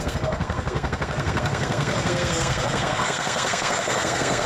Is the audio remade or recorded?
remade